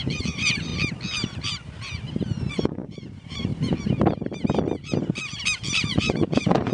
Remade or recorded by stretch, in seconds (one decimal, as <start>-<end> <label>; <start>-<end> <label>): 0.0-0.7 remade; 0.7-2.5 recorded; 2.5-3.5 remade; 3.5-5.8 recorded; 5.8-6.7 remade